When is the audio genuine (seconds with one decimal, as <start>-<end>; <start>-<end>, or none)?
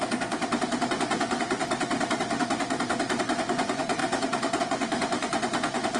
0.4-0.9; 1.6-3.2; 4.0-4.6